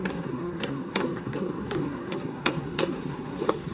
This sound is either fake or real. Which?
fake